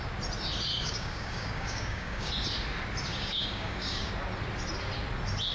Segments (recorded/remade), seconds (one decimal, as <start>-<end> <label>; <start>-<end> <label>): 0.0-0.7 recorded; 0.7-2.3 remade; 2.3-3.1 recorded; 3.1-4.1 remade; 4.1-5.5 recorded